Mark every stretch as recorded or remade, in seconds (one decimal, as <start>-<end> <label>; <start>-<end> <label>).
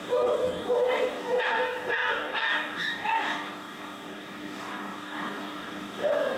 0.0-6.4 remade